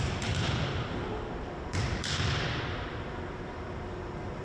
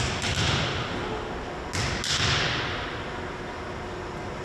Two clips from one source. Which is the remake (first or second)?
first